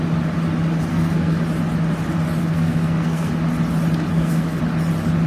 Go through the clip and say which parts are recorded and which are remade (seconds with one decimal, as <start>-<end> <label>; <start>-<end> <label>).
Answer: 0.0-0.9 recorded; 0.9-1.4 remade; 1.4-2.4 recorded; 2.4-3.3 remade; 3.3-4.1 recorded; 4.1-4.6 remade; 4.6-5.3 recorded